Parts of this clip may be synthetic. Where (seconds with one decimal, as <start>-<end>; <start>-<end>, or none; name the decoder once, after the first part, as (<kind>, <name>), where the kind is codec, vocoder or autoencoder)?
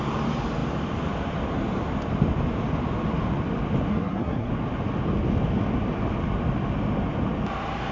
3.9-4.5 (codec, SNAC)